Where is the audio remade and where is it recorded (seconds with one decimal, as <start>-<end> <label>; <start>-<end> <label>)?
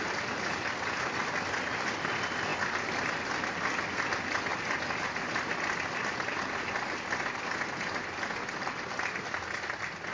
0.0-10.1 recorded